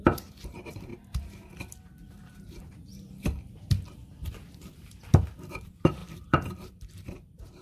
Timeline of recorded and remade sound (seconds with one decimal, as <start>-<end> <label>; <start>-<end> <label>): 0.0-0.9 remade; 0.9-2.1 recorded; 2.1-2.9 remade; 2.9-5.5 recorded; 5.5-7.6 remade